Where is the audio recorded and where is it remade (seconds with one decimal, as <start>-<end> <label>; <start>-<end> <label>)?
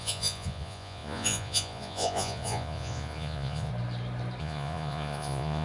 0.0-3.7 remade; 3.7-4.4 recorded; 4.4-5.6 remade